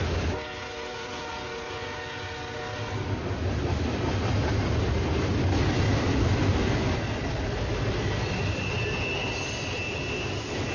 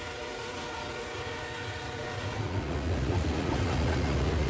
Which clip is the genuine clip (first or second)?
first